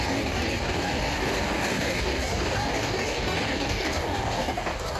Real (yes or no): no